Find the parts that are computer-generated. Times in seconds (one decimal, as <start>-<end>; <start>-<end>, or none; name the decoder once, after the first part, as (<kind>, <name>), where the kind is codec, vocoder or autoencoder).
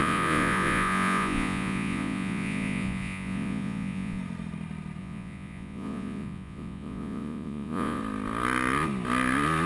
0.0-4.2 (vocoder, Vocos); 5.0-8.0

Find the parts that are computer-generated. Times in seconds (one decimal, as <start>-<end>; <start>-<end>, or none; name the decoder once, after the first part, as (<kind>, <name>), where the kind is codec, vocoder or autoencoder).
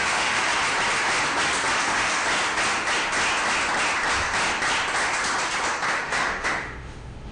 0.0-0.6 (autoencoder, DAC-VAE); 1.8-2.2; 5.9-7.3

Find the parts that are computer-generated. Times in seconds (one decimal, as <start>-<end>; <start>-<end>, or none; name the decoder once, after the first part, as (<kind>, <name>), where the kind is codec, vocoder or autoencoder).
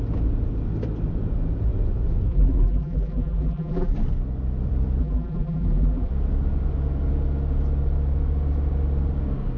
2.3-3.9 (vocoder, BigVGAN v2); 5.0-6.1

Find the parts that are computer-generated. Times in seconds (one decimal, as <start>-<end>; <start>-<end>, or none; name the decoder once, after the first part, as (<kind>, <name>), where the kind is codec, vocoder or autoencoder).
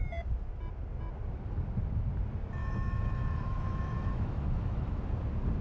2.6-5.0 (autoencoder, DAC-VAE)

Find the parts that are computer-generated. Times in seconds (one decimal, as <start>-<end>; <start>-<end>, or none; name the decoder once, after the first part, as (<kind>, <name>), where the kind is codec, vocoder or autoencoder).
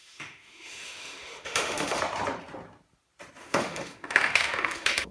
0.0-2.0 (autoencoder, DAC-VAE); 3.4-5.1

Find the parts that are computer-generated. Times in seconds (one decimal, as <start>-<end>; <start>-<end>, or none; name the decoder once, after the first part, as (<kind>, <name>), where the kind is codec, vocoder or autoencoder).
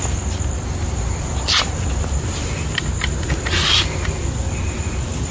0.8-1.3 (vocoder, BigVGAN v2)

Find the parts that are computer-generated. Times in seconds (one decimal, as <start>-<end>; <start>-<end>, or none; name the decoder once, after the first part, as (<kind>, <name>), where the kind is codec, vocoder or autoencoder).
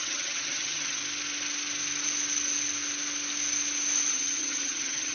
0.0-1.0 (vocoder, HiFi-GAN); 4.1-5.1